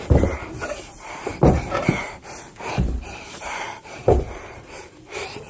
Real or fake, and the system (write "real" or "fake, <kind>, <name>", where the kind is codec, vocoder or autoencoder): fake, vocoder, BigVGAN v2